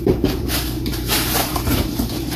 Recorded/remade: remade